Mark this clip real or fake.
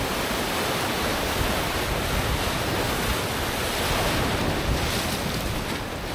real